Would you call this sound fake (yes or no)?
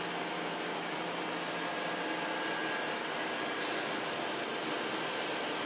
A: no